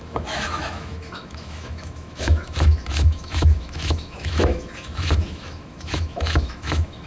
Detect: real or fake fake